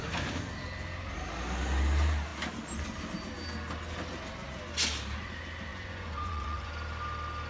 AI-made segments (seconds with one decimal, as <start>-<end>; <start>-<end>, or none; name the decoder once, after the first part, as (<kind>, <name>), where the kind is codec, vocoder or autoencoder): 5.7-6.7 (vocoder, Vocos)